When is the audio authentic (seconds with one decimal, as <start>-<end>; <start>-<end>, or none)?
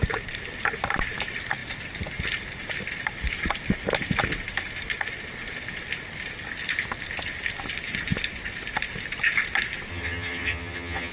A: 0.0-9.9